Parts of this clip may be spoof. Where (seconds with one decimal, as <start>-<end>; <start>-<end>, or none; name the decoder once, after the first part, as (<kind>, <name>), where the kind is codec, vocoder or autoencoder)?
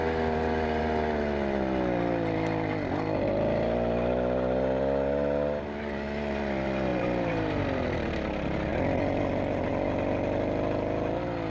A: 6.9-8.1 (vocoder, BigVGAN v2)